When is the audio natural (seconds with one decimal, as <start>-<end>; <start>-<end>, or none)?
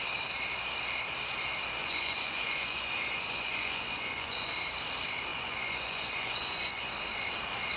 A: 0.0-1.8; 4.5-5.3; 6.9-7.8